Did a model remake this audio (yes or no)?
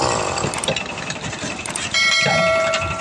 yes